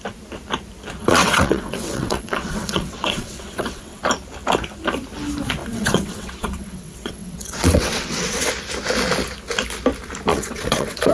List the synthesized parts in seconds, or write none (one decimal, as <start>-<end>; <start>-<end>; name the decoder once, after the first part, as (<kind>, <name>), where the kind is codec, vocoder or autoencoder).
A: 1.0-4.0 (vocoder, WaveNeXt); 5.6-8.5; 10.3-11.1